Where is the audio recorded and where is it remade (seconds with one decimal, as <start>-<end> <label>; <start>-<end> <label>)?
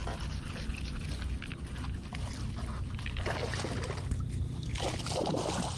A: 0.0-5.8 recorded